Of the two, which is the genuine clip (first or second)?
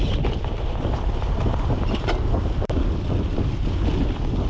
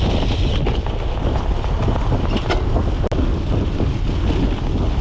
second